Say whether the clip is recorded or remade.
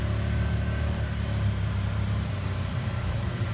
remade